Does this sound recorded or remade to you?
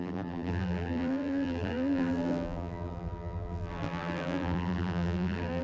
remade